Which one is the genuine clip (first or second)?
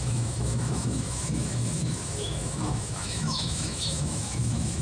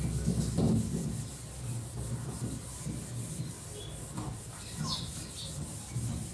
second